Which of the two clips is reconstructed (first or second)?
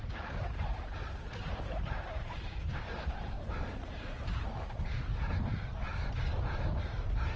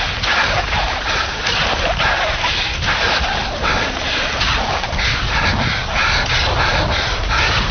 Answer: first